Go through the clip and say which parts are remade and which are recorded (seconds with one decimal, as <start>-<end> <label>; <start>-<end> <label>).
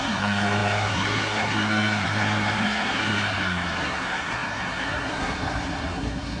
0.0-6.4 remade